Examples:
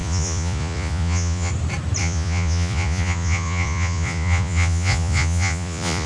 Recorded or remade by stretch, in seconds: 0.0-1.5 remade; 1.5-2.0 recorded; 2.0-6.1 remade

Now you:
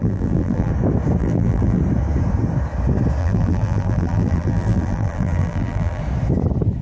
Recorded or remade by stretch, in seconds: 0.0-0.7 remade; 0.7-1.2 recorded; 1.2-1.8 remade; 1.8-3.2 recorded; 3.2-6.0 remade; 6.0-6.8 recorded

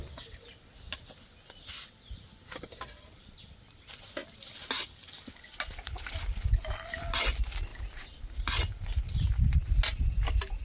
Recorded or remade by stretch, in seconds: 0.0-10.6 recorded

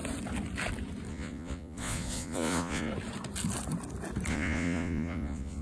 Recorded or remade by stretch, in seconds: 0.0-1.1 recorded; 1.1-2.9 remade; 2.9-4.3 recorded; 4.3-5.6 remade

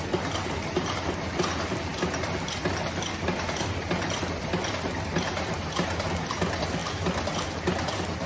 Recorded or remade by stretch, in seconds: 0.0-8.3 recorded

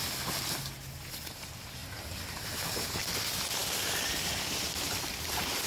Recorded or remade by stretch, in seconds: 0.0-1.8 remade; 1.8-2.8 recorded; 2.8-5.7 remade